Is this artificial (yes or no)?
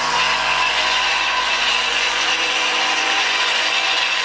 yes